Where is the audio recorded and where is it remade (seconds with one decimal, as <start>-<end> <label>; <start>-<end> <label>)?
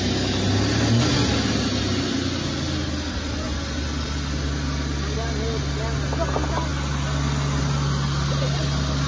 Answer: 0.0-9.1 recorded